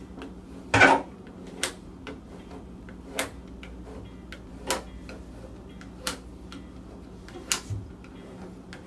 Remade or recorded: recorded